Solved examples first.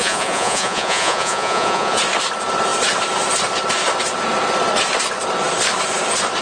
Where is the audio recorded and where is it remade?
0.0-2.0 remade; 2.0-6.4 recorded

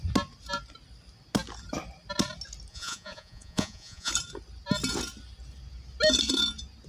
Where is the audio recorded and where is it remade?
0.0-2.7 recorded; 2.7-4.1 remade; 4.1-6.9 recorded

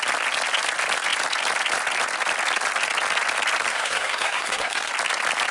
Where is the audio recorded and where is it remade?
0.0-3.7 recorded; 3.7-4.9 remade; 4.9-5.5 recorded

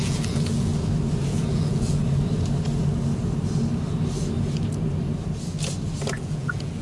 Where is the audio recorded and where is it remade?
0.0-0.7 remade; 0.7-1.3 recorded; 1.3-2.0 remade; 2.0-6.1 recorded; 6.1-6.8 remade

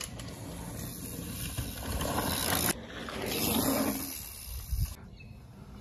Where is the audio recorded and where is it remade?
0.0-5.8 recorded